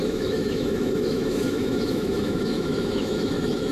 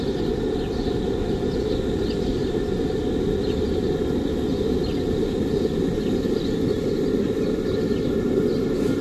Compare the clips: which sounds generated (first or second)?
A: first